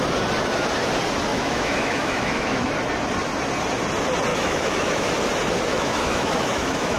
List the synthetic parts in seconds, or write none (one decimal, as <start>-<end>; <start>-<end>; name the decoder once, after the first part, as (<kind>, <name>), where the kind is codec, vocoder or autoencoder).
1.3-2.7 (autoencoder, DAC-VAE); 4.3-5.1; 5.7-7.0